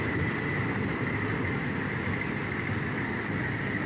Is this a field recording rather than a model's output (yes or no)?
yes